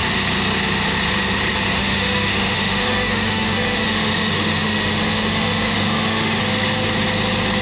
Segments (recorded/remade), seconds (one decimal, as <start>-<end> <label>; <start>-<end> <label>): 0.0-1.8 recorded; 1.8-6.4 remade; 6.4-7.6 recorded